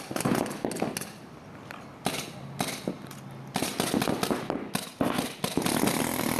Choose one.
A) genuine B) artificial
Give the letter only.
A